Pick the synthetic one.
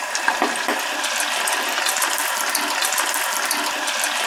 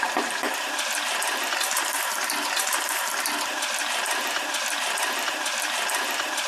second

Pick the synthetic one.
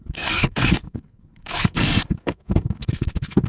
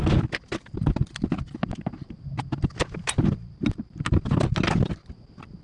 first